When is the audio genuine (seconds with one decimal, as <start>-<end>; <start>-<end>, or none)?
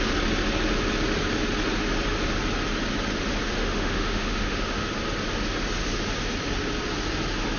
0.0-3.6; 4.9-7.6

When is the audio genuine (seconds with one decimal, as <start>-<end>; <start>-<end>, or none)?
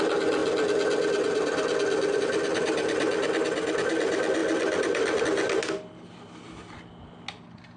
0.0-7.8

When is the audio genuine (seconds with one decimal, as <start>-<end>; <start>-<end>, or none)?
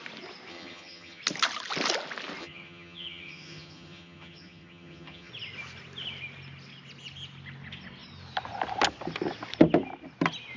0.0-0.5; 1.2-2.4; 5.3-10.6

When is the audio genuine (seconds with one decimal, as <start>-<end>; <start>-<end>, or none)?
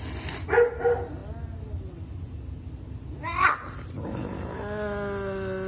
0.0-5.7